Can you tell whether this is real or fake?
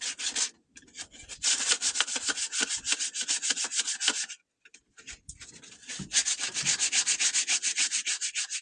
real